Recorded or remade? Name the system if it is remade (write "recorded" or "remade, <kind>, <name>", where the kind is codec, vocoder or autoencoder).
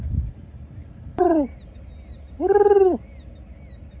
recorded